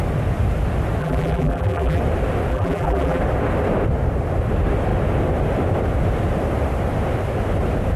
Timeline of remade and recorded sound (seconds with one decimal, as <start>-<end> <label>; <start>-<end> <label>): 0.0-1.0 recorded; 1.0-2.0 remade; 2.0-2.5 recorded; 2.5-3.2 remade; 3.2-8.0 recorded